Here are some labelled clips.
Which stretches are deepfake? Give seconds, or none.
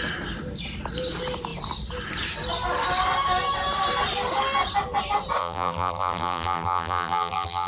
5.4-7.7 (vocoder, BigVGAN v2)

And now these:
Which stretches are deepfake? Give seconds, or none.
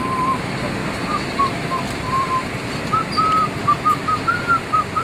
0.8-3.8 (vocoder, BigVGAN v2)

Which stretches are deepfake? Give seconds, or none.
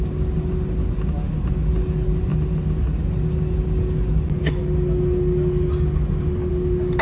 none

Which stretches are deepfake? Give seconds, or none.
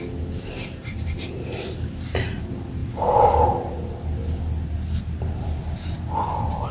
0.0-2.8 (vocoder, BigVGAN v2); 5.0-6.7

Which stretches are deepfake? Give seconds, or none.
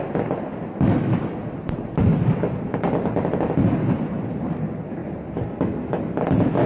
none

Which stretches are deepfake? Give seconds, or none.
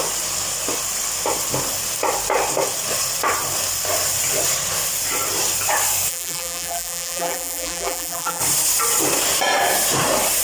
6.1-8.4 (vocoder, BigVGAN v2)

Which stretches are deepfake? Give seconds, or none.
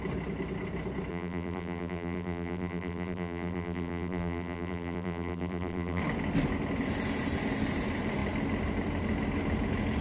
1.1-6.0 (vocoder, BigVGAN v2)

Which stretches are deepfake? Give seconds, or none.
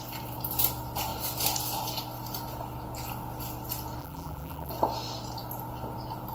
4.0-4.7 (vocoder, BigVGAN v2)